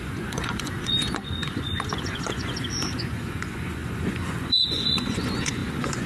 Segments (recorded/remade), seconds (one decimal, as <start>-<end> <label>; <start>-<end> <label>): 0.0-6.1 remade

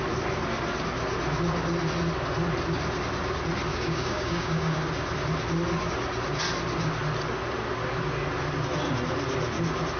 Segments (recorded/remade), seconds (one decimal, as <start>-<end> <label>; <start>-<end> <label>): 0.0-3.7 recorded; 3.7-4.8 remade; 4.8-10.0 recorded

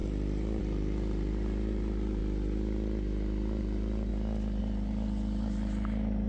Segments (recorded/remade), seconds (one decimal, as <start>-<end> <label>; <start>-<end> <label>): 0.0-2.2 remade; 2.2-3.6 recorded; 3.6-4.1 remade; 4.1-4.6 recorded; 4.6-6.3 remade

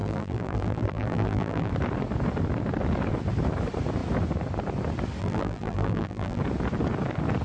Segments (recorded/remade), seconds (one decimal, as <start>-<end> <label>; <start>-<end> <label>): 0.0-1.7 remade; 1.7-5.2 recorded; 5.2-6.4 remade; 6.4-7.4 recorded

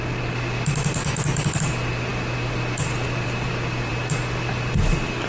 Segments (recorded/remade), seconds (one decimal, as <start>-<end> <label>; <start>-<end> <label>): 0.0-1.0 recorded; 1.0-1.5 remade; 1.5-5.3 recorded

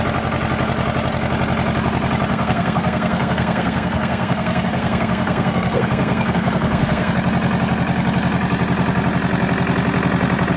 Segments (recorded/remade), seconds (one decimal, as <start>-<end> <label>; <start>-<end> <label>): 0.0-2.3 recorded; 2.3-7.1 remade; 7.1-10.6 recorded